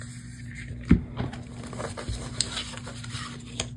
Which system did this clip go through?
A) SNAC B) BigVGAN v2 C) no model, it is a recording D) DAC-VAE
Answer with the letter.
C